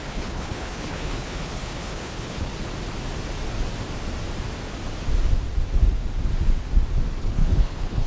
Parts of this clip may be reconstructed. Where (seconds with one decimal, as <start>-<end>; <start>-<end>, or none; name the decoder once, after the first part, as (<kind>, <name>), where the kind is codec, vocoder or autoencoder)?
0.0-2.5 (codec, HILCodec); 7.2-8.1